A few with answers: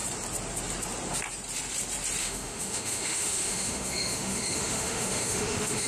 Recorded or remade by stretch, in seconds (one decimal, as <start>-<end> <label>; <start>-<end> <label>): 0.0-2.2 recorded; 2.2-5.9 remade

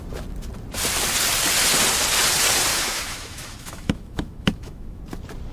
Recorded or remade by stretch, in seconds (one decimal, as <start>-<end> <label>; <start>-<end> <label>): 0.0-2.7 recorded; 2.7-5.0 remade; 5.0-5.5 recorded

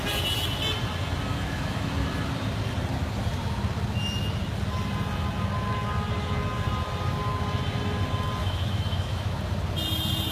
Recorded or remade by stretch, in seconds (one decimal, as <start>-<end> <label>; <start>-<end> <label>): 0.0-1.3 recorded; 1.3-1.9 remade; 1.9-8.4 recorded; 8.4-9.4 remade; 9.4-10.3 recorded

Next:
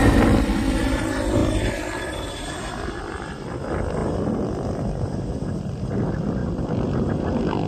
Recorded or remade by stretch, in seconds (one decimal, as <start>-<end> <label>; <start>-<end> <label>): 0.0-7.7 recorded

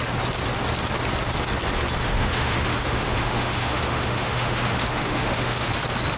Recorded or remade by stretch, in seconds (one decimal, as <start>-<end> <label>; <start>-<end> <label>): 0.0-2.0 recorded; 2.0-5.7 remade; 5.7-6.2 recorded

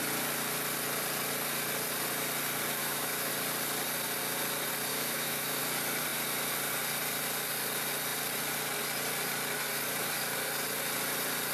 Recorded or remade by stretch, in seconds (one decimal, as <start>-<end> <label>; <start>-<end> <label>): 0.0-2.8 recorded; 2.8-3.3 remade; 3.3-4.9 recorded; 4.9-5.6 remade; 5.6-11.5 recorded